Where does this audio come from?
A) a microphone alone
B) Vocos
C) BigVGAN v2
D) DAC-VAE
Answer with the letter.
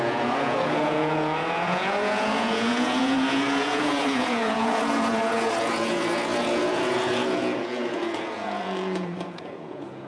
B